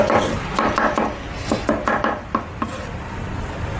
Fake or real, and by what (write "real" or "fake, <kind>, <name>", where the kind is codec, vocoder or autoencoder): real